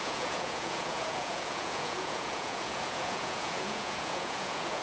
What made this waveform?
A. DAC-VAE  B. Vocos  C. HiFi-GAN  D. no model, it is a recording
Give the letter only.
B